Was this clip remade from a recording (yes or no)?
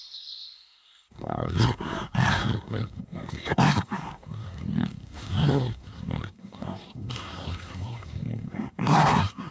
yes